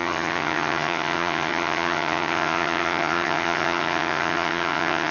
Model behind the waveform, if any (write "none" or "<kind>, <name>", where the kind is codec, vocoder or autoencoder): vocoder, HiFi-GAN